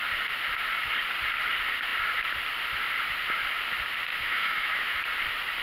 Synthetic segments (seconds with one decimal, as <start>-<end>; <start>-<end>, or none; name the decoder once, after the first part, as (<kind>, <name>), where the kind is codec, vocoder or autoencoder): 4.1-5.0 (autoencoder, DAC-VAE)